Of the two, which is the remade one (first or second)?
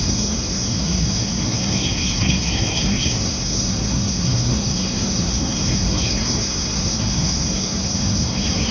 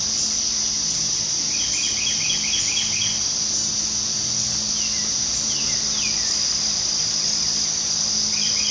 first